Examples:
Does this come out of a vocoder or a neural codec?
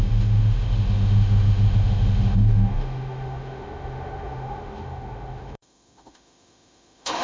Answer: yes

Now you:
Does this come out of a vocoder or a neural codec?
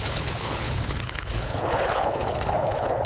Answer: yes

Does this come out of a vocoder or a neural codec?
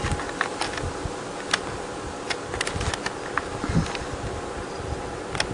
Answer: no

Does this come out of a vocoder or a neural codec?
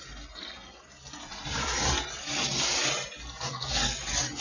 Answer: no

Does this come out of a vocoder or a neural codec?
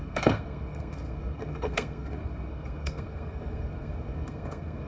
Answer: yes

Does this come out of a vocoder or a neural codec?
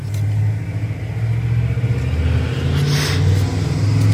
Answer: no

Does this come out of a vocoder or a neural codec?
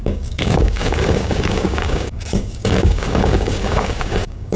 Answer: yes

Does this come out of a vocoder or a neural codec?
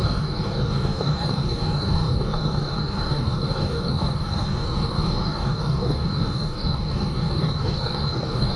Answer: yes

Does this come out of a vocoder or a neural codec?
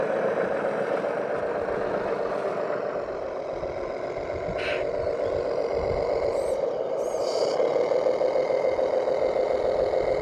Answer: no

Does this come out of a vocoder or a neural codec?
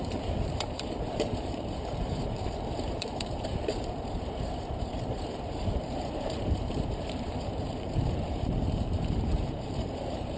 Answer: yes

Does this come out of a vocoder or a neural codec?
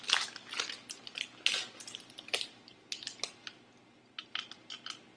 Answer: no